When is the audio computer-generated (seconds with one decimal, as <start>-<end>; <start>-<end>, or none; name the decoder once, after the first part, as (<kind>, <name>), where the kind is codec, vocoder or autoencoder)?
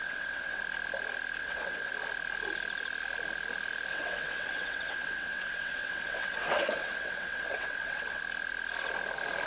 0.0-0.6 (vocoder, WaveNeXt); 1.4-1.9; 3.9-8.2